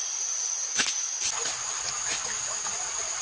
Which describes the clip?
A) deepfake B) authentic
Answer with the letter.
B